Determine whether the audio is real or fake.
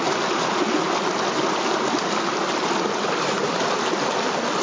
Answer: real